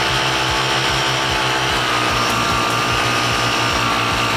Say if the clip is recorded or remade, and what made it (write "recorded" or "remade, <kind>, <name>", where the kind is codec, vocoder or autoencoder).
recorded